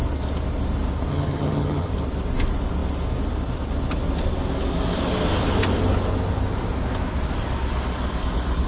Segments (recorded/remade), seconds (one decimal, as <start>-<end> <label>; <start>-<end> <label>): 0.0-1.1 recorded; 1.1-1.9 remade; 1.9-8.7 recorded